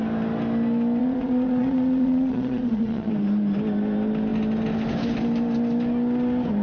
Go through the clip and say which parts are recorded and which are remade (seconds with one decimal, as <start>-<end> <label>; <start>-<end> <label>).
0.0-1.0 recorded; 1.0-3.1 remade; 3.1-6.6 recorded